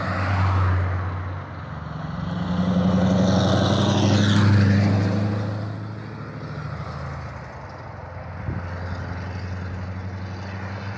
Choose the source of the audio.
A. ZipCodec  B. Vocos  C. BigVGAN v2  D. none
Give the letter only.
D